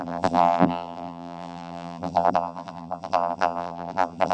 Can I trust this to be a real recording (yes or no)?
no